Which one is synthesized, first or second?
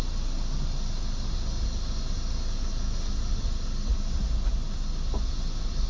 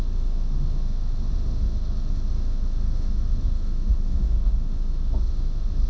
second